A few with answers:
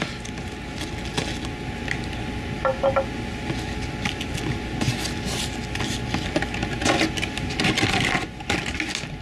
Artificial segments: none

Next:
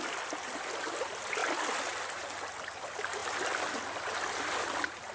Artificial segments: none

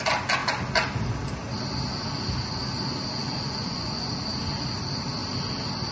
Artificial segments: 3.2-4.1

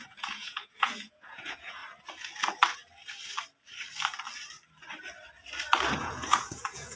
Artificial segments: 0.0-1.8; 6.0-7.0

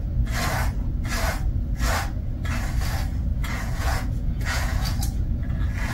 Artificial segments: 3.4-5.3